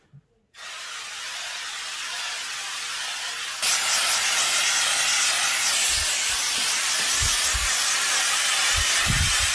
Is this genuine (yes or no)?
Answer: yes